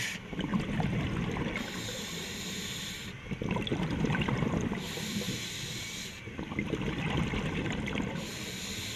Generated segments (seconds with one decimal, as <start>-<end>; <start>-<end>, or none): 3.7-8.6